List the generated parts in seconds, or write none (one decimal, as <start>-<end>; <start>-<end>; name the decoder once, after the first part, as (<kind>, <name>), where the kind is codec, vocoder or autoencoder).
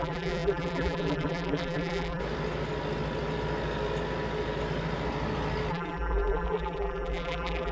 0.0-2.2 (vocoder, BigVGAN v2); 5.7-7.7